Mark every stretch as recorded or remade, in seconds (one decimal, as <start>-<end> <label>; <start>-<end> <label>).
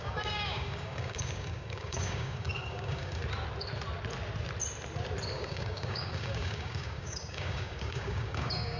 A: 0.0-3.2 remade; 3.2-5.3 recorded; 5.3-8.8 remade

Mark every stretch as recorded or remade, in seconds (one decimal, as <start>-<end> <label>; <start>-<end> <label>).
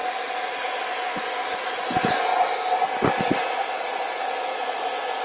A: 0.0-5.2 recorded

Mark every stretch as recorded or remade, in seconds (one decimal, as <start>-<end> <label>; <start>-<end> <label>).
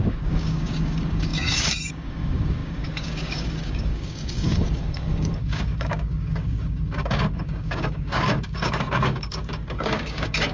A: 0.0-10.5 remade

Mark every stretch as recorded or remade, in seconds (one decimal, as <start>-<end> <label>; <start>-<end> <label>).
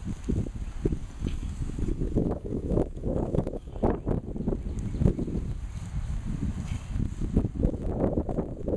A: 0.0-1.0 recorded; 1.0-3.7 remade; 3.7-8.8 recorded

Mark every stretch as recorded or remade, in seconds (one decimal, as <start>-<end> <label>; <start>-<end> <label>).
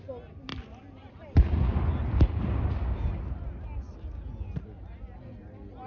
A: 0.0-5.9 recorded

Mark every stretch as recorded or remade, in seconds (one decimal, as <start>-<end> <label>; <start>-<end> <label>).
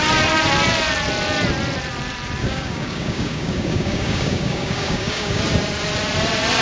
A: 0.0-2.4 recorded; 2.4-5.4 remade; 5.4-6.6 recorded